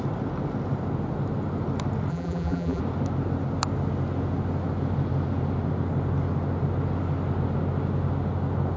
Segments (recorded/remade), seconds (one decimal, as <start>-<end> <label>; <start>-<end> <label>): 0.0-2.1 recorded; 2.1-2.8 remade; 2.8-8.8 recorded